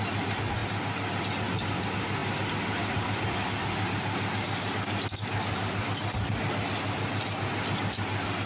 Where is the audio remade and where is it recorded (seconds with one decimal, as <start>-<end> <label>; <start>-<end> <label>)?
0.0-8.5 recorded